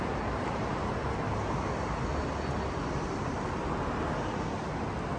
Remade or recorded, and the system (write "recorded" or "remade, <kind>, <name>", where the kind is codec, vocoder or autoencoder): recorded